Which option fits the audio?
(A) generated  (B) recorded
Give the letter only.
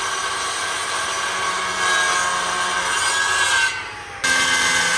B